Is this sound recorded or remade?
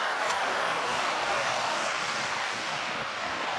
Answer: remade